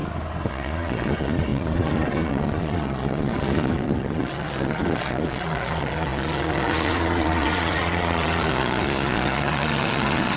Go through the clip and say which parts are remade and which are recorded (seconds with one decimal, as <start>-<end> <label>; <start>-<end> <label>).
0.0-0.5 recorded; 0.5-10.4 remade